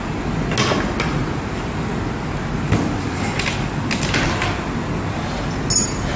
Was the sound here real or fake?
real